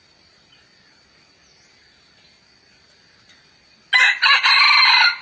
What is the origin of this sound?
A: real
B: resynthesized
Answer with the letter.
A